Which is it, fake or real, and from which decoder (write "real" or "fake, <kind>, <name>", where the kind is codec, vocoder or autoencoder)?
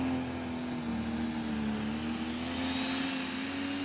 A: real